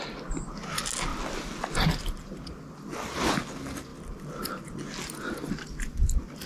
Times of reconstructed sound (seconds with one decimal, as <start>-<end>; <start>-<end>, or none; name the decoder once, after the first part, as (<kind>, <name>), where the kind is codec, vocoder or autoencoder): none